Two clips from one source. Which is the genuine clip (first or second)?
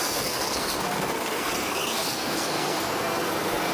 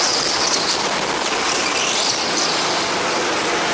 second